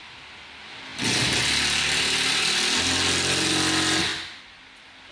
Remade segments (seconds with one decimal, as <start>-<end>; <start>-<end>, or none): none